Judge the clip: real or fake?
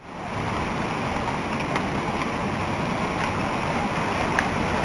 real